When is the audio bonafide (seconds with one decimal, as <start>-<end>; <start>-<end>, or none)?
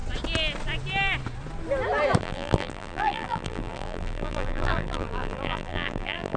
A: 0.0-2.2